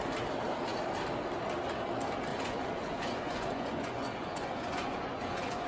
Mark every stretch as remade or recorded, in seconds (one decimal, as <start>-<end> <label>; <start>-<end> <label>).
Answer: 0.0-2.3 recorded; 2.3-5.7 remade